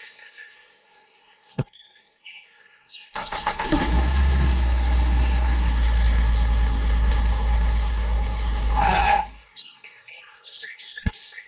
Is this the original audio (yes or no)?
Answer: no